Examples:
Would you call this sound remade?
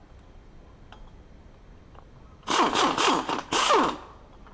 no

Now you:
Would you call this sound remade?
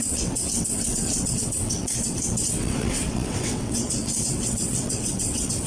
yes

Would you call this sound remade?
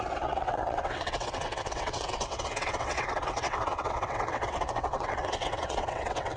yes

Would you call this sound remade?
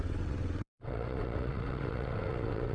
yes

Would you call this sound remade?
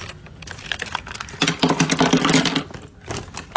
no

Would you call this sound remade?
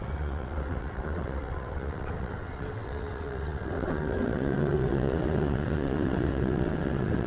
yes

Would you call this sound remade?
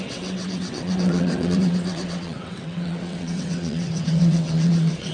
yes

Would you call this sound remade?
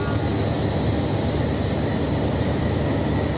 no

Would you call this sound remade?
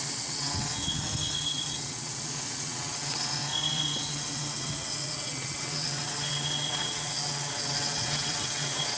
yes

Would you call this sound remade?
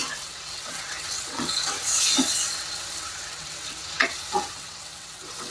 yes